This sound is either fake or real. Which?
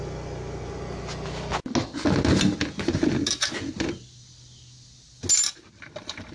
real